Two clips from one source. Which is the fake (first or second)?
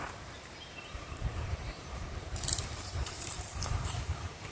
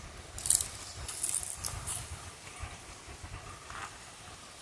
first